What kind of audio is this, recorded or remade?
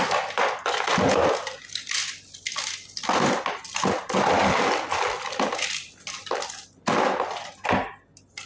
recorded